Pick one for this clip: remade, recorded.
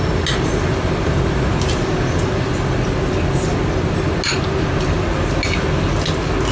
recorded